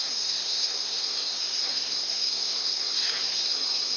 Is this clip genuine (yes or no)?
no